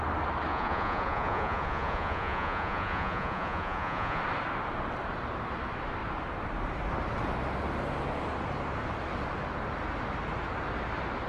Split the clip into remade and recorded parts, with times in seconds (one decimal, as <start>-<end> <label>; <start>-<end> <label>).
0.0-0.5 recorded; 0.5-4.2 remade; 4.2-11.3 recorded